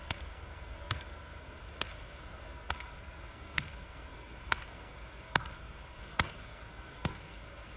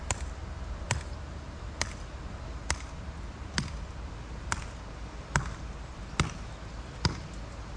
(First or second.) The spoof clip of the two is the first